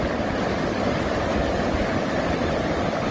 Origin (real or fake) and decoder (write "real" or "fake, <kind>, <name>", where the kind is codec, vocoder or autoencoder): real